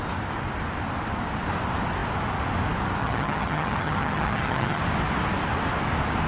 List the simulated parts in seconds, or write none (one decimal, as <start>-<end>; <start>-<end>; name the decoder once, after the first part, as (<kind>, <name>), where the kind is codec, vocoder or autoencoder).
3.0-4.8 (vocoder, HiFi-GAN)